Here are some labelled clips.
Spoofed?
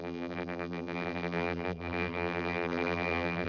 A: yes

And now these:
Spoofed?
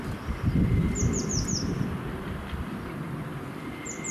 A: yes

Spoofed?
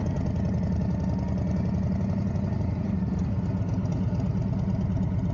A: no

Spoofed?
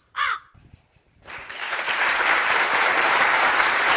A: yes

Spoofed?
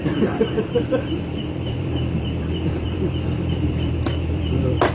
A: yes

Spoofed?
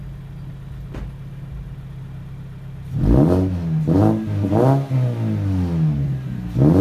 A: no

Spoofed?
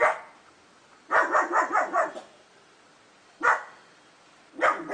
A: no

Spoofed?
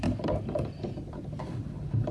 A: yes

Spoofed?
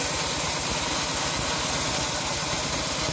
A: no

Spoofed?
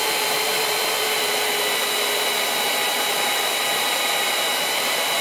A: yes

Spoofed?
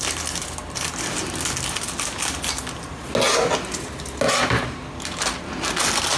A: no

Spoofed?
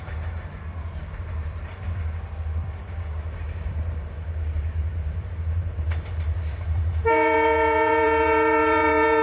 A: yes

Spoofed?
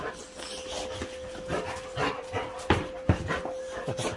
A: no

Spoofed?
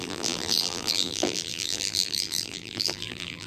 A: yes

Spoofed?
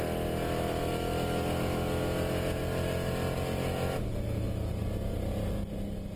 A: no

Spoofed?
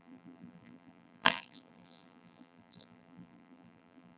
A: yes